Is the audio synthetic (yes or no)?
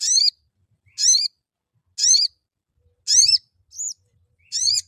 no